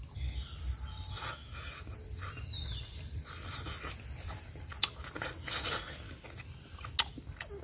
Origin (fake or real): real